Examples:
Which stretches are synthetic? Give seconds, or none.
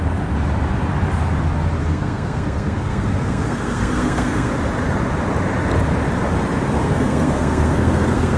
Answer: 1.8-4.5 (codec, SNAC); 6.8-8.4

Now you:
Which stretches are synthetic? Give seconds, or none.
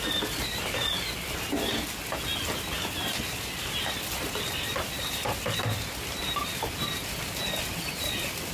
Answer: none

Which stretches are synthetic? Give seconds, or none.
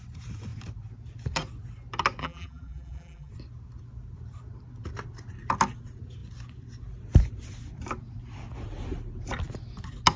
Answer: 2.2-3.3 (vocoder, BigVGAN v2)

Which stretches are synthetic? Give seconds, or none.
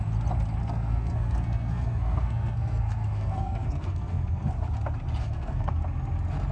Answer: 0.6-4.5 (codec, SNAC); 5.2-5.7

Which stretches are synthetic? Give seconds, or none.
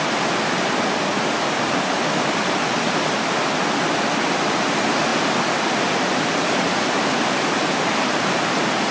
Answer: 5.1-6.8 (vocoder, BigVGAN v2)